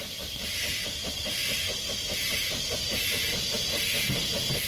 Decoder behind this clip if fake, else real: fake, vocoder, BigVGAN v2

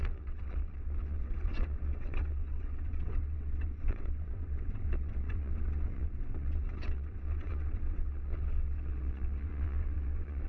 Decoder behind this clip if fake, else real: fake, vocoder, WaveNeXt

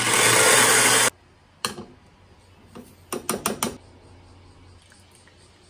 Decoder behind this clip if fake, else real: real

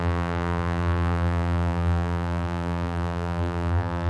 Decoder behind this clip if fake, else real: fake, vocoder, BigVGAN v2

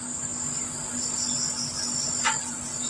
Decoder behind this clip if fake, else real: real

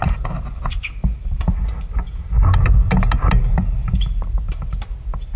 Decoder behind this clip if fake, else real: real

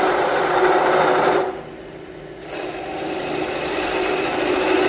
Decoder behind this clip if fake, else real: real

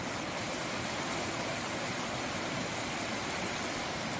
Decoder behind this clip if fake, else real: real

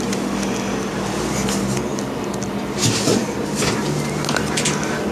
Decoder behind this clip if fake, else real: real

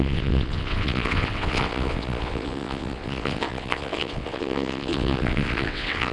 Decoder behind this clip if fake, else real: fake, vocoder, WaveNeXt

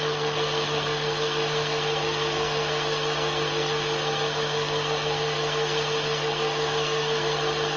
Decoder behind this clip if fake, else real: fake, codec, SNAC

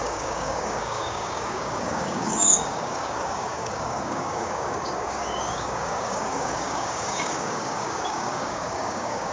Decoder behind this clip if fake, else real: fake, codec, DAC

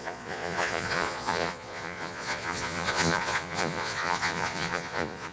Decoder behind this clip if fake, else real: fake, vocoder, Vocos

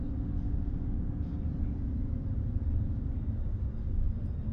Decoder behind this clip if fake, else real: real